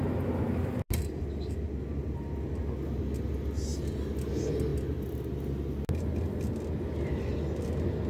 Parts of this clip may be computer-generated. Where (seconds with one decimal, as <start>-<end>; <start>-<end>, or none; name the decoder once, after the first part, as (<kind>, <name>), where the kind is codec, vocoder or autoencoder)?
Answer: none